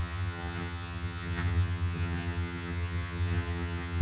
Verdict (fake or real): fake